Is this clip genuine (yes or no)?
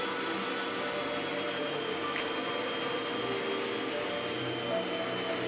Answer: yes